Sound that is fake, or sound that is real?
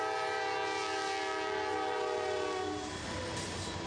real